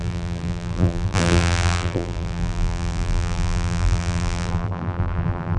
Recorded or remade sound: remade